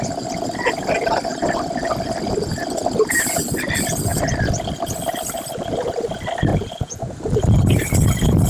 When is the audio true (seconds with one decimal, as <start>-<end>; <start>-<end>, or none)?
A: 0.0-6.5; 7.1-8.5

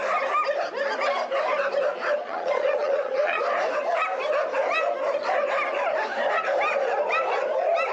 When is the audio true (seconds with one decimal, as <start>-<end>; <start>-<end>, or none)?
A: 0.0-2.2; 3.4-7.9

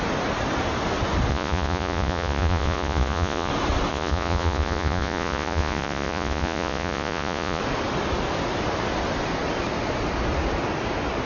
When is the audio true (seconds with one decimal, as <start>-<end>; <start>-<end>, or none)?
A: 0.0-1.3; 3.5-3.9; 7.6-11.3

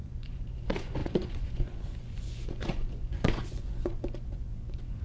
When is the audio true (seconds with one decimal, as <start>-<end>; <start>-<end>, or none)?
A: none

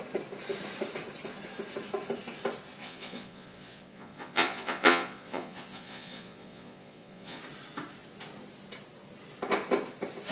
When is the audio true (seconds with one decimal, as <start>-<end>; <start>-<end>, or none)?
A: 0.0-2.8; 7.4-10.3